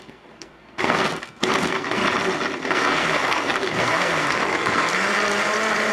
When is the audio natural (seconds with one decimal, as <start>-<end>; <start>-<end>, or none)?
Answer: 2.0-2.6; 4.9-5.9